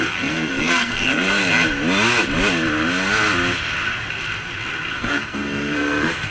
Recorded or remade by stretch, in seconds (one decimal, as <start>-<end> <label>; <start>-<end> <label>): 0.0-1.4 remade; 1.4-4.9 recorded; 4.9-6.3 remade